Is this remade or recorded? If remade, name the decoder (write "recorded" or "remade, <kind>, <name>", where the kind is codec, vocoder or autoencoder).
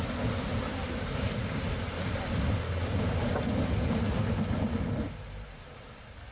recorded